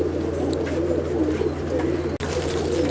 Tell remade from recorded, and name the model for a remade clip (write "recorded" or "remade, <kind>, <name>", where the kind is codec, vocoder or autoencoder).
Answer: recorded